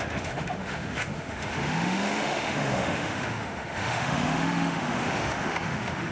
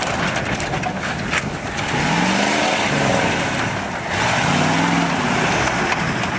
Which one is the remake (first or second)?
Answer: first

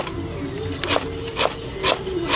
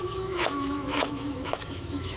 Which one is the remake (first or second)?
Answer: second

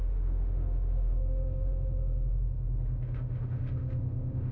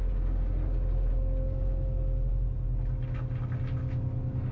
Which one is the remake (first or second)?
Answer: first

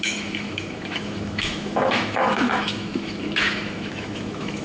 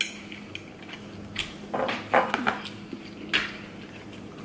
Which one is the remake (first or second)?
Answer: first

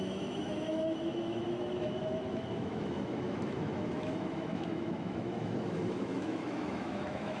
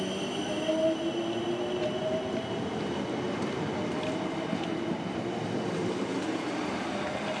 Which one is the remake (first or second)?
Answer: first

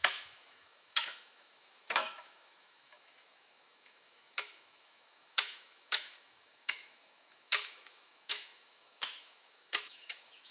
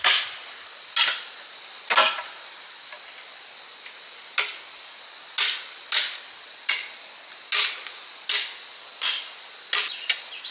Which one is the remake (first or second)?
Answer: first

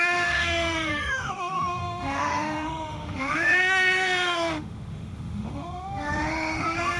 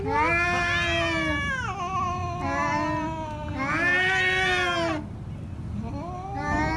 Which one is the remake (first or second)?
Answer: first